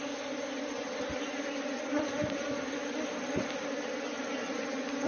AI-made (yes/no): no